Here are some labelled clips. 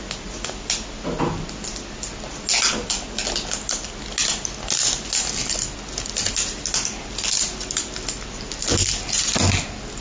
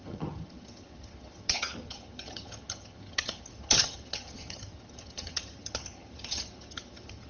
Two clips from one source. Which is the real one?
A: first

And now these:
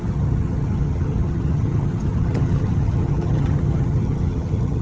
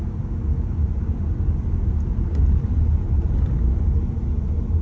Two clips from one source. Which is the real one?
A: second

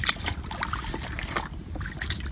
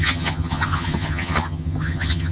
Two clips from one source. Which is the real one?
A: first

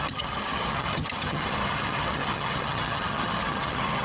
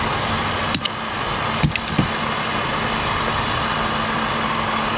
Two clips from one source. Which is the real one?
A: second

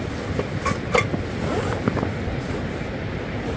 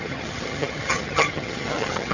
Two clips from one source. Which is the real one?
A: first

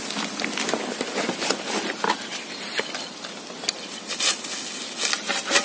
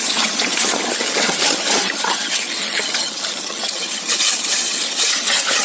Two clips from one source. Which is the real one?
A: first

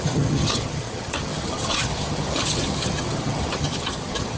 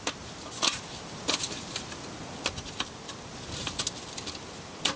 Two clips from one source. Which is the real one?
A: second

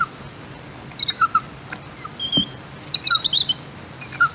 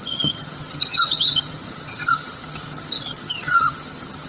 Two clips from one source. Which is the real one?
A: first